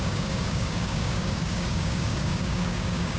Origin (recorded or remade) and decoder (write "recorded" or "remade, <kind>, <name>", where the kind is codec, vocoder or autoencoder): remade, codec, DAC